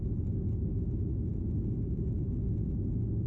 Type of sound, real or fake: real